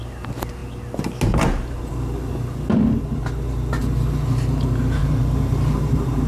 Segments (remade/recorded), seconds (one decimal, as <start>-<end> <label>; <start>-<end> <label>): 0.0-5.0 recorded; 5.0-6.3 remade